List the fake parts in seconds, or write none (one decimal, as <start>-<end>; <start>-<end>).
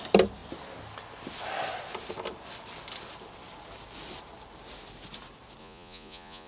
5.6-6.5